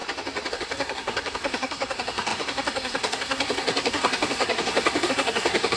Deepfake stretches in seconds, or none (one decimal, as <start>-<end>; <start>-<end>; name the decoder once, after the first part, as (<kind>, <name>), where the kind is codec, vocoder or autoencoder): 0.5-5.8 (codec, SNAC)